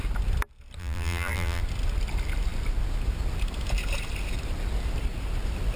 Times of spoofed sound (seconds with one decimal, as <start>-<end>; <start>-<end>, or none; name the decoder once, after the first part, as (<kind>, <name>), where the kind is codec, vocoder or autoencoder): 0.8-1.6 (vocoder, BigVGAN v2)